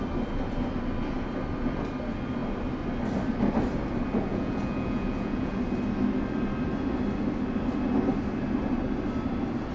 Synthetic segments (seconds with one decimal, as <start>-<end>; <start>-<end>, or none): 4.3-5.6